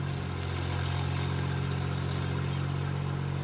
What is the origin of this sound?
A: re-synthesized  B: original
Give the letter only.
B